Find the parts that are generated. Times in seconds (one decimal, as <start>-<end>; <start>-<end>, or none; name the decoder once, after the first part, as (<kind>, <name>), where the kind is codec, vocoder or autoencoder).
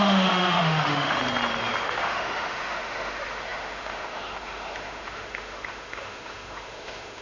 0.0-1.2 (autoencoder, DAC-VAE); 1.8-7.2